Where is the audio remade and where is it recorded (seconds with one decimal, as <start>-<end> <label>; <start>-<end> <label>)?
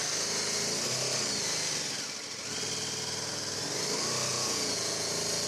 0.0-4.3 recorded; 4.3-5.1 remade; 5.1-5.5 recorded